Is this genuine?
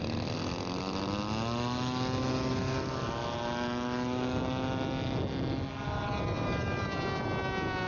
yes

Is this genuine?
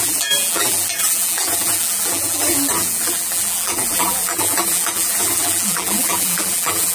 no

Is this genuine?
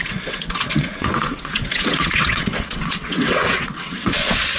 no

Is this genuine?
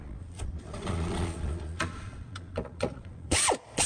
no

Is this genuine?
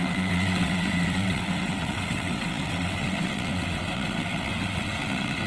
no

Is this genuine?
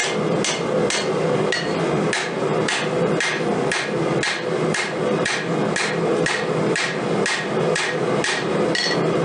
yes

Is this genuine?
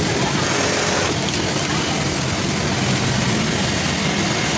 yes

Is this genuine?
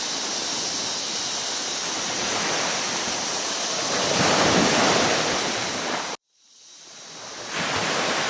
yes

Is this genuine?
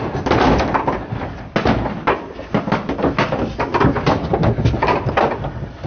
yes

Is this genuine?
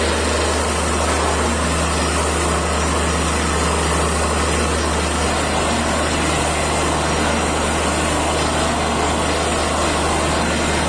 yes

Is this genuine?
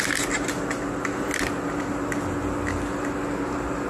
yes